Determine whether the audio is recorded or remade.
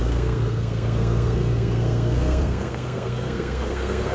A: remade